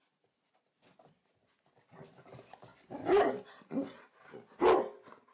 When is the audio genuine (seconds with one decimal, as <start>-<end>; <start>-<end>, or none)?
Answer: 0.0-2.7; 3.6-5.3

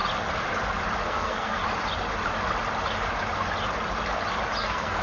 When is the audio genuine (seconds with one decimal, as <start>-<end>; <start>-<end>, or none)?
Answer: 0.0-1.0; 1.6-4.6